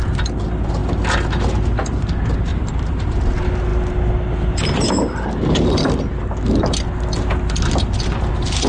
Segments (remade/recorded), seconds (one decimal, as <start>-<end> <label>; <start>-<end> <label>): 0.0-2.5 recorded; 2.5-3.0 remade; 3.0-8.7 recorded